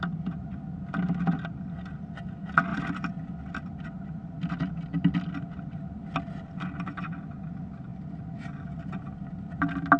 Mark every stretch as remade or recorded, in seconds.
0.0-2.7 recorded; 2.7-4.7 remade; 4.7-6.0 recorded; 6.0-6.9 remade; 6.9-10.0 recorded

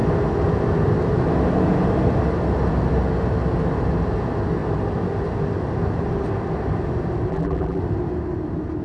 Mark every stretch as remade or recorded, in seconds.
0.0-7.3 recorded; 7.3-7.8 remade; 7.8-8.8 recorded